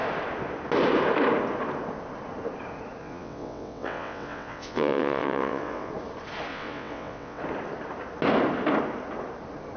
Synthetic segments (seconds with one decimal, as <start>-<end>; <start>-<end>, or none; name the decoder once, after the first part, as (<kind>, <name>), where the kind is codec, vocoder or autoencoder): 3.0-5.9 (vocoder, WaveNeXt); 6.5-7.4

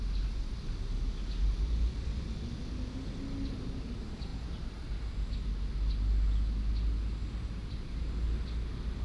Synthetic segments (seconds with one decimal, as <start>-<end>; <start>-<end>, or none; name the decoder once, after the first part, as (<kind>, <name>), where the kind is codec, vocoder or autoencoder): none

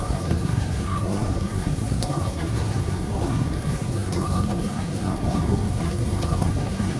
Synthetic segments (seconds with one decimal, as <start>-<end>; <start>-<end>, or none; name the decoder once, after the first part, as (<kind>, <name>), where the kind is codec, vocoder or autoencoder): 0.0-7.0 (codec, SNAC)

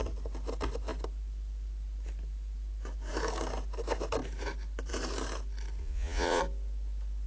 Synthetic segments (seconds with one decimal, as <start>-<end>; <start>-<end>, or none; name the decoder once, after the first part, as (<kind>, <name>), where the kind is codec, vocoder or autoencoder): 5.8-6.4 (vocoder, Vocos)

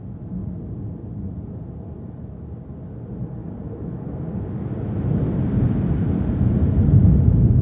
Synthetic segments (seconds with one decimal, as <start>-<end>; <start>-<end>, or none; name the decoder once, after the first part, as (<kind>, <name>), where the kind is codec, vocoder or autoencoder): none

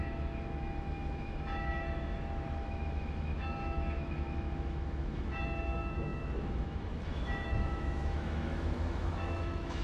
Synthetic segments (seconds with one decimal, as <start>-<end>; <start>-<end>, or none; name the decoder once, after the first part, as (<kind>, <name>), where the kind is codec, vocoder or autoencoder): 0.0-9.8 (autoencoder, DAC-VAE)